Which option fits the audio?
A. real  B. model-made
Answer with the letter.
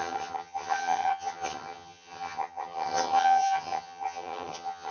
B